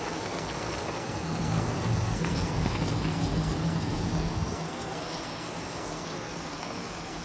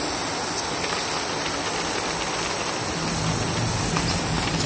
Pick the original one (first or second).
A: second